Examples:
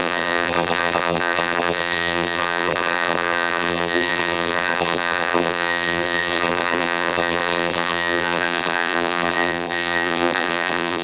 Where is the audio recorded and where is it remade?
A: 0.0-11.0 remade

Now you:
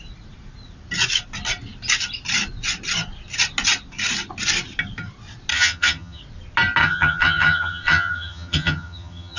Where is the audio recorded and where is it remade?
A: 0.0-5.5 recorded; 5.5-6.2 remade; 6.2-6.8 recorded; 6.8-9.4 remade

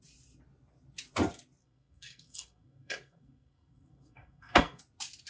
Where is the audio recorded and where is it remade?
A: 0.0-1.6 recorded; 1.6-4.8 remade; 4.8-5.3 recorded

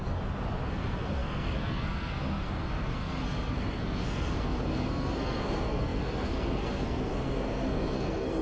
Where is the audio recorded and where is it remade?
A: 0.0-0.7 recorded; 0.7-8.4 remade

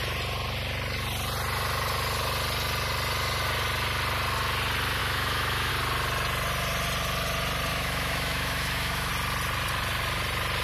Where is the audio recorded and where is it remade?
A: 0.0-5.0 recorded; 5.0-5.7 remade; 5.7-7.7 recorded; 7.7-9.1 remade; 9.1-10.6 recorded

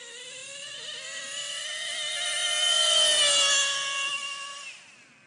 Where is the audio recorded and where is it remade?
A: 0.0-5.3 recorded